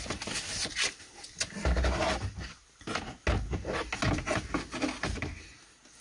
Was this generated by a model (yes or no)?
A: no